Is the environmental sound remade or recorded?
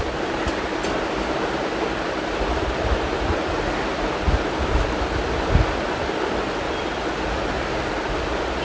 recorded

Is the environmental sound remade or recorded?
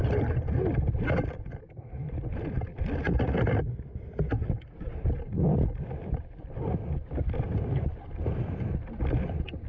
recorded